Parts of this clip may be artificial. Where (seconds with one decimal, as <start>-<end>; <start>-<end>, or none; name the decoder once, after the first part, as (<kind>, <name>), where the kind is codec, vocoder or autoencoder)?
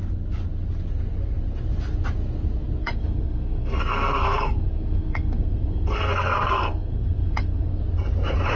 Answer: 2.8-7.8 (codec, SNAC)